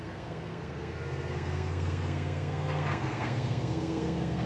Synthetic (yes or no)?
yes